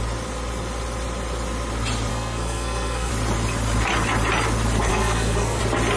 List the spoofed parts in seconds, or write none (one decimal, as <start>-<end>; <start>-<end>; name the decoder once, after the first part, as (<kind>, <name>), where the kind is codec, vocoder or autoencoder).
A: 2.1-3.1 (codec, SNAC); 4.9-5.6